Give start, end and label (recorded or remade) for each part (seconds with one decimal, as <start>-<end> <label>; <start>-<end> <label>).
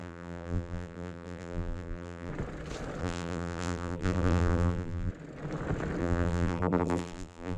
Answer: 0.0-2.3 remade; 2.3-3.0 recorded; 3.0-5.1 remade; 5.1-6.0 recorded; 6.0-7.6 remade